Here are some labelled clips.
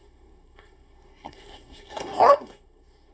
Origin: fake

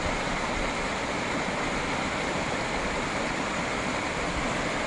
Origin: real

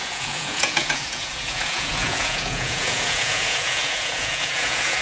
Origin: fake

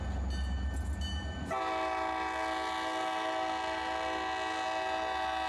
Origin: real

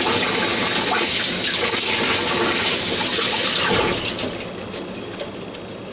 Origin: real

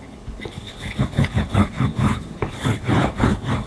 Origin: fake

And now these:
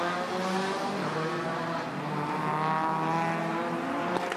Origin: real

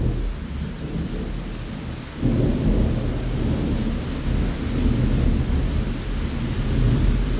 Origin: real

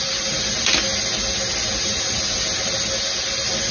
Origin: real